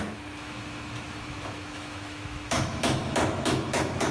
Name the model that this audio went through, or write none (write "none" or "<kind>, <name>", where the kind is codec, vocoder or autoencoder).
autoencoder, DAC-VAE